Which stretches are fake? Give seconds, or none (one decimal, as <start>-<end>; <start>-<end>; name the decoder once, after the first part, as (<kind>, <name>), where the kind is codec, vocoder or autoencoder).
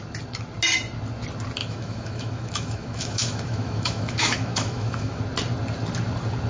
1.6-5.2 (autoencoder, DAC-VAE)